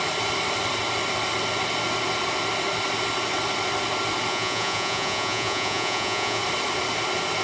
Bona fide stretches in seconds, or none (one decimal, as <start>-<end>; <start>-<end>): 0.0-4.3; 6.4-7.4